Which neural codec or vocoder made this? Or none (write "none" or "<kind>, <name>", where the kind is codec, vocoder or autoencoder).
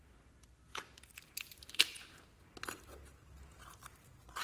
none